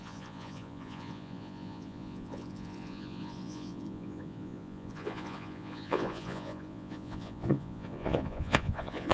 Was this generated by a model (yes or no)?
yes